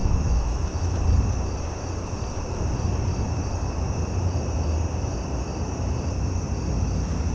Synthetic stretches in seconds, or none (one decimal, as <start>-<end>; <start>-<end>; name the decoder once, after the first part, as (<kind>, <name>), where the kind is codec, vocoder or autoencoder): 0.0-1.0 (autoencoder, DAC-VAE)